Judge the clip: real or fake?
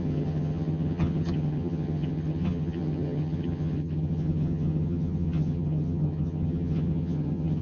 fake